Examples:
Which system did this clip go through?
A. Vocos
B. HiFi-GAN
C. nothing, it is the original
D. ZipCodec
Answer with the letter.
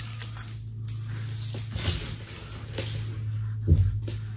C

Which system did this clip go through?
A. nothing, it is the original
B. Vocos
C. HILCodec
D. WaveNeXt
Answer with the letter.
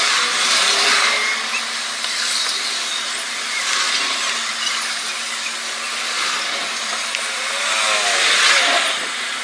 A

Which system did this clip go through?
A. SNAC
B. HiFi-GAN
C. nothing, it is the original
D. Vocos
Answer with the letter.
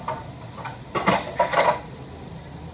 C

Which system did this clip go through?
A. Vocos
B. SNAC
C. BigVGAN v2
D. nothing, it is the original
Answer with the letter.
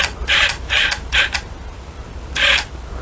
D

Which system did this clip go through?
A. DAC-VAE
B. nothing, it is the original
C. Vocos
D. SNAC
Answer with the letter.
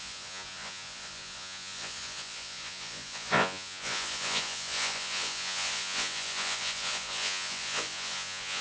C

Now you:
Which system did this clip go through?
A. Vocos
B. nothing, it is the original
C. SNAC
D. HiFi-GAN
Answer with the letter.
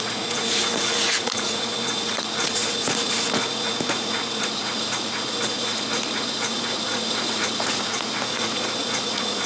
A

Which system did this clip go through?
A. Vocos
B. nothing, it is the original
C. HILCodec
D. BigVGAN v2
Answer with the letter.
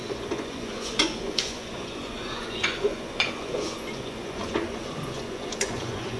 A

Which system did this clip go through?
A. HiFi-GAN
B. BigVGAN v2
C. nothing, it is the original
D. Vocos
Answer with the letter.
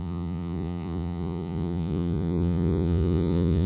D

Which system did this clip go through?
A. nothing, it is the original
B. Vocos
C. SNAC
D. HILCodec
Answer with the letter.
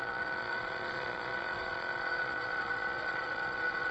B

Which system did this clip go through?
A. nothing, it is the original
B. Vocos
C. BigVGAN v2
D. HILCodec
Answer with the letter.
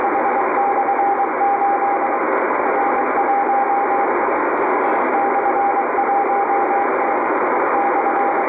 A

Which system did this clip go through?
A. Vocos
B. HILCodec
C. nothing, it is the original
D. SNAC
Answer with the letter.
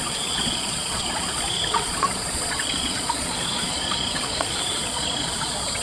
A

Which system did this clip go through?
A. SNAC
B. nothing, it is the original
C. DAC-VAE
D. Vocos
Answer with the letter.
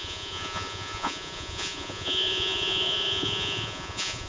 D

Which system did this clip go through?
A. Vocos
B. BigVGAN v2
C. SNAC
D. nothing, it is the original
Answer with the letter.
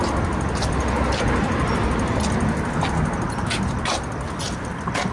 D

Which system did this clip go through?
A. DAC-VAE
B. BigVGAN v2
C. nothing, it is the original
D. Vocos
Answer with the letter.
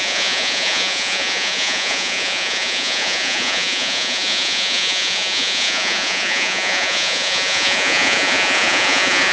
D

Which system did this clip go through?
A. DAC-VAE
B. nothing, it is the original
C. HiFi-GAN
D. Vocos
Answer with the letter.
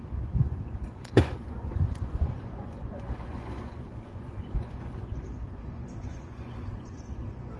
D